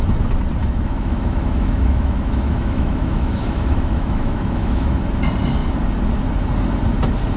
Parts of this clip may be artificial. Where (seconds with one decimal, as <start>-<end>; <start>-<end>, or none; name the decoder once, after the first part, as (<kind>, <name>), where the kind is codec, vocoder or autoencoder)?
0.6-5.0 (autoencoder, DAC-VAE)